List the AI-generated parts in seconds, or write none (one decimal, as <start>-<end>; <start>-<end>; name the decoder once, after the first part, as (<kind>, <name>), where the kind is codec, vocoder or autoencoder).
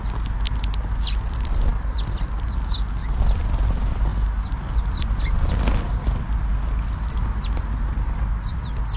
none